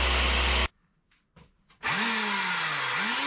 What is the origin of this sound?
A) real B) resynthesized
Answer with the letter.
A